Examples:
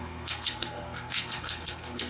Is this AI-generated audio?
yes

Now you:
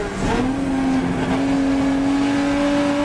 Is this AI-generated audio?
no